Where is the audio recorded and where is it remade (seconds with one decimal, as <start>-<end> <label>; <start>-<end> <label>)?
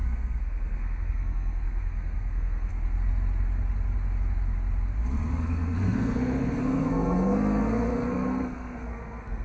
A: 0.0-2.7 remade; 2.7-5.3 recorded; 5.3-9.4 remade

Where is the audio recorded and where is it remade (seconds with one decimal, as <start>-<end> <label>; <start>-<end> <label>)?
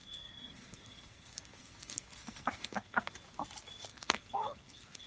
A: 0.0-3.1 remade; 3.1-3.9 recorded; 3.9-5.1 remade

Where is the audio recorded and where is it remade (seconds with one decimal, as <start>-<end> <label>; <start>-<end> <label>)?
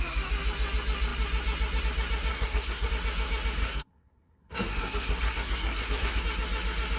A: 0.0-2.3 recorded; 2.3-2.9 remade; 2.9-3.6 recorded; 3.6-6.2 remade; 6.2-7.0 recorded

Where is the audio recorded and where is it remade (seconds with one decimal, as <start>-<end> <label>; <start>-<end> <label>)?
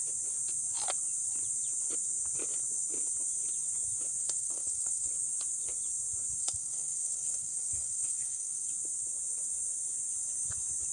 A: 0.0-4.2 recorded; 4.2-5.1 remade; 5.1-6.4 recorded; 6.4-8.7 remade; 8.7-10.9 recorded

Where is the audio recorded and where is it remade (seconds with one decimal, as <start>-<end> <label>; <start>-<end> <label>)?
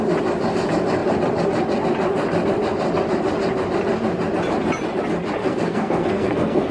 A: 0.0-5.4 recorded; 5.4-6.7 remade